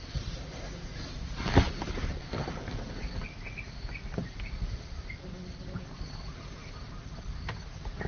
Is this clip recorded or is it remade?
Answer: recorded